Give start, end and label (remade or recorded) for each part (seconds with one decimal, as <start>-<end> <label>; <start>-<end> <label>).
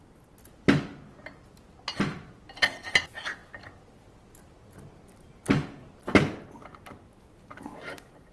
0.0-8.3 recorded